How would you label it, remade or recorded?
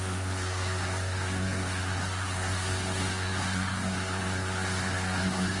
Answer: remade